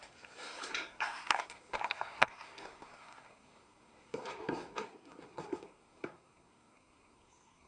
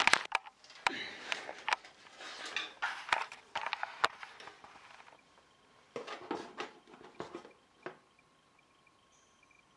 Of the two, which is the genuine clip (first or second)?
second